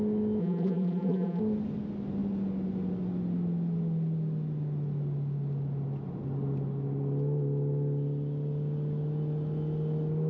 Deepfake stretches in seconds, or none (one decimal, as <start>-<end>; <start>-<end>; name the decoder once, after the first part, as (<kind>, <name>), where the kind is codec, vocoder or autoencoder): 0.4-1.4 (vocoder, BigVGAN v2)